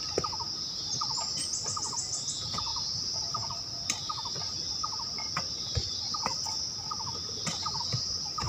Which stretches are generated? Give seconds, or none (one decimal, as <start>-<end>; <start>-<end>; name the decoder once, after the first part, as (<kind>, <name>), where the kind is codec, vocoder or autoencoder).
none